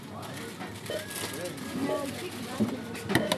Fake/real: real